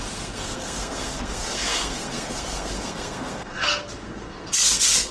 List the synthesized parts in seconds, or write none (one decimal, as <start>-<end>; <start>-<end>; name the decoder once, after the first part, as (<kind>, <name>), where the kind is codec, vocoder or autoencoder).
0.0-5.1 (codec, SNAC)